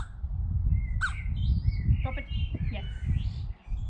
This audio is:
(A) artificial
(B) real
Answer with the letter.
B